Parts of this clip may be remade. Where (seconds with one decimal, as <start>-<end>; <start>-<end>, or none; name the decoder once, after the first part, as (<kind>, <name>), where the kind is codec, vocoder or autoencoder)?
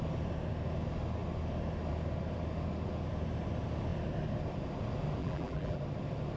5.2-5.8 (vocoder, BigVGAN v2)